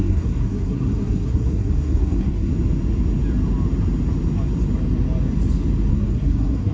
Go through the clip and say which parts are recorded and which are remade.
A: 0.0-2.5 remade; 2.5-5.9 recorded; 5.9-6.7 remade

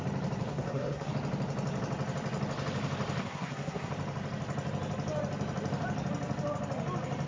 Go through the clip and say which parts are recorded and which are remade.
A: 0.0-0.5 recorded; 0.5-1.1 remade; 1.1-3.2 recorded; 3.2-3.9 remade; 3.9-7.3 recorded

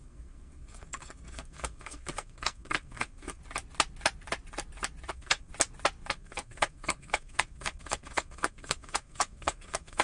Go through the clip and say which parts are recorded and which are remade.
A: 0.0-3.4 remade; 3.4-5.1 recorded; 5.1-5.5 remade; 5.5-6.1 recorded; 6.1-10.0 remade

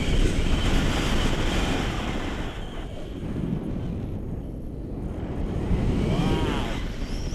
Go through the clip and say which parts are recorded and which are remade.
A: 0.0-7.3 recorded